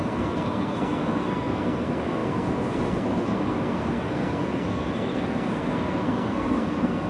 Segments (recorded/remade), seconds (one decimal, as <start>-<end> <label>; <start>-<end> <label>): 0.0-7.1 remade